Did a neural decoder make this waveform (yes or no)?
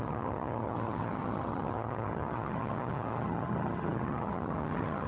yes